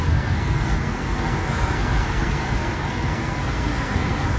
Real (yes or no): no